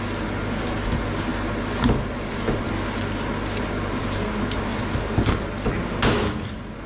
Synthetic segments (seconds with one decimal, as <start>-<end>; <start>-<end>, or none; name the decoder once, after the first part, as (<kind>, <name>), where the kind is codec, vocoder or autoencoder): none